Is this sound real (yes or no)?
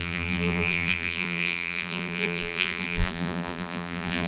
no